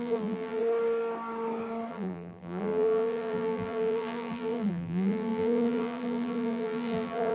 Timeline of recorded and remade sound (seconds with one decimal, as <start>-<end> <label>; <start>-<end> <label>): 0.0-0.6 remade; 0.6-1.9 recorded; 1.9-7.3 remade